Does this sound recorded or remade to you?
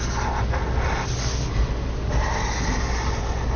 recorded